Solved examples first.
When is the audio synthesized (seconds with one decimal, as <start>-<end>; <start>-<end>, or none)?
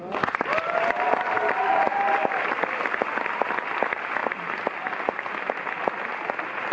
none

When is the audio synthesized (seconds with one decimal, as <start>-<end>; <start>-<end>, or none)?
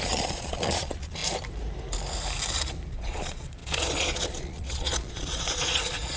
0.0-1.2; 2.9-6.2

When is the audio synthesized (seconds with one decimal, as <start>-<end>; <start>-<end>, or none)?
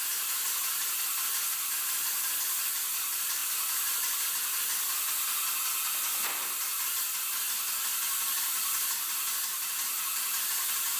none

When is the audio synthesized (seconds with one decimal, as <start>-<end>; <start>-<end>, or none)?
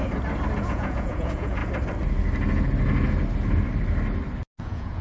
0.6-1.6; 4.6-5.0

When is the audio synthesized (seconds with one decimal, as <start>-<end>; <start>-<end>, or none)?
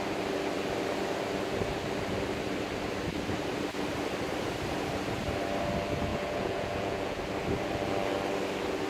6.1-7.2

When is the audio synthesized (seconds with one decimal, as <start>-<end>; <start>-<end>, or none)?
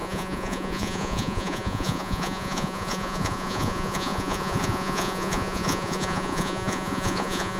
0.0-7.6